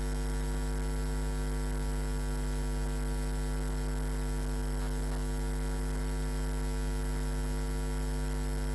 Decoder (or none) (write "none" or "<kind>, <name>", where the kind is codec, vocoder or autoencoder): none